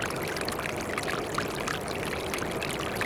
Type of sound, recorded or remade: recorded